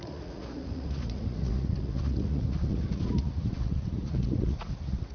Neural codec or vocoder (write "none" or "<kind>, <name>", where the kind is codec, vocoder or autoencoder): vocoder, Vocos